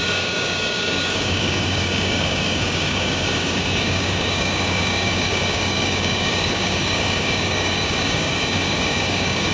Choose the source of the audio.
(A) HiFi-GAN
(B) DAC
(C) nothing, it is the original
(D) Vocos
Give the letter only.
B